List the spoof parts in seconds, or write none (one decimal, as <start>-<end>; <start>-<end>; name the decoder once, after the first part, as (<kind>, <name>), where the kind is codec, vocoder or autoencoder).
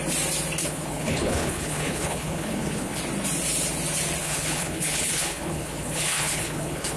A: 0.6-3.0 (codec, HILCodec); 4.2-7.0